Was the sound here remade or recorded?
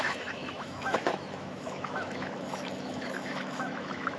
remade